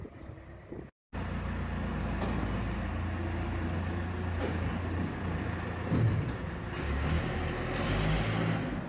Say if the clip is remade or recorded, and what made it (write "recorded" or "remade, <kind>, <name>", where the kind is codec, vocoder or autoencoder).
recorded